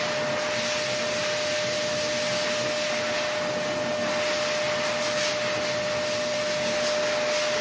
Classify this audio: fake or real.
real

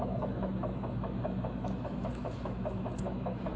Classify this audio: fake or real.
fake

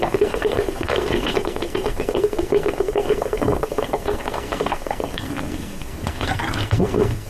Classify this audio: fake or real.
fake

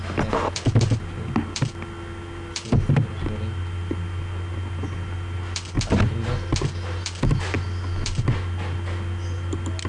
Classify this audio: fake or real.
real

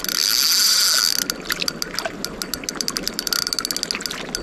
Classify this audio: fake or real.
real